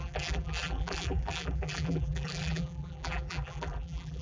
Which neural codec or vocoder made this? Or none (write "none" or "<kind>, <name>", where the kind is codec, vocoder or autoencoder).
vocoder, BigVGAN v2